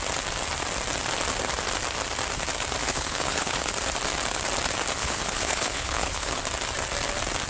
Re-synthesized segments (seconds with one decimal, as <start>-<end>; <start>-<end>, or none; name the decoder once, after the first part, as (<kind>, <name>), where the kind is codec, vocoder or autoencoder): 2.8-3.7 (codec, HILCodec); 5.0-6.4